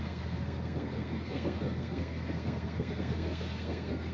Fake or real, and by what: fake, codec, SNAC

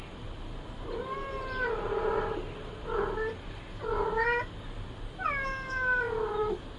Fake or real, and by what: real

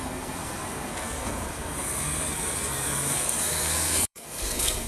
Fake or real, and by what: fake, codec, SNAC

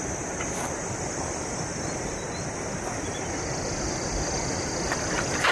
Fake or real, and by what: real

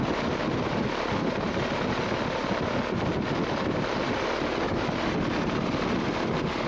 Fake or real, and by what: real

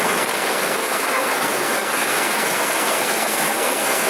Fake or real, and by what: fake, codec, SNAC